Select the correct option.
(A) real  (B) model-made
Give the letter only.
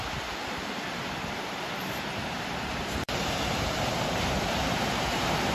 B